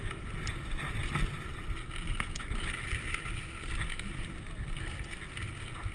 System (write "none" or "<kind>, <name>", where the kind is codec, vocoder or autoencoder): none